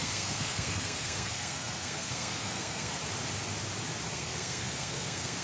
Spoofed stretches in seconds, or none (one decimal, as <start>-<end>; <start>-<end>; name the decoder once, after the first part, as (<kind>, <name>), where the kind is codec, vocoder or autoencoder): 0.0-3.0 (codec, SNAC); 4.1-5.4